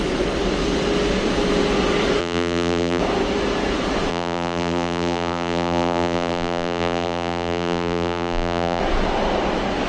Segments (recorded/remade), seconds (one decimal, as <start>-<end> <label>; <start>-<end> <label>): 0.0-2.2 recorded; 2.2-3.0 remade; 3.0-4.1 recorded; 4.1-8.8 remade; 8.8-9.9 recorded